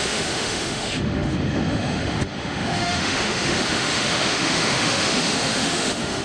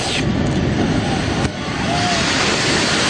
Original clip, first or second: second